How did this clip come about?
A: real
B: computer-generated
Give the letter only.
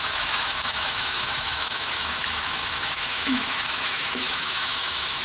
B